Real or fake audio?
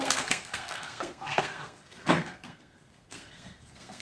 fake